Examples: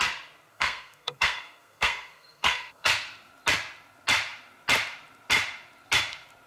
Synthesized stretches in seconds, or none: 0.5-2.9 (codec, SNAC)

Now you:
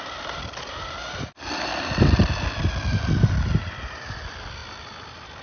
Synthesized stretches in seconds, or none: none

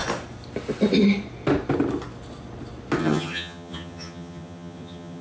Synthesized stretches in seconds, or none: 3.0-5.2 (vocoder, HiFi-GAN)